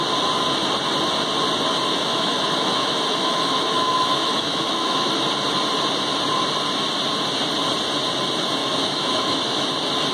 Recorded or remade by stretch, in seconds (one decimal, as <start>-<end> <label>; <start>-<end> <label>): 0.0-1.9 recorded; 1.9-5.1 remade; 5.1-8.6 recorded; 8.6-9.7 remade; 9.7-10.1 recorded